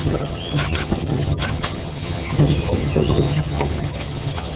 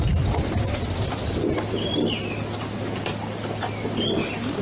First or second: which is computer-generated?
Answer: first